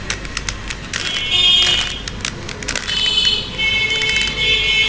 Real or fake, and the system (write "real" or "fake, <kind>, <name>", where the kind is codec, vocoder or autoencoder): real